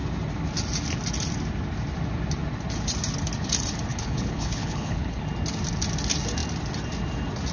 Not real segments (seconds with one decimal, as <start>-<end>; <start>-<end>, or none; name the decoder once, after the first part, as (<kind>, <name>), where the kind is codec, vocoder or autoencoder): 3.9-5.2 (codec, HILCodec)